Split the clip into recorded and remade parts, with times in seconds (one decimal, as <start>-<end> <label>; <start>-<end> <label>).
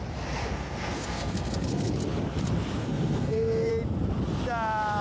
0.0-0.4 recorded; 0.4-1.9 remade; 1.9-2.8 recorded; 2.8-3.7 remade; 3.7-5.0 recorded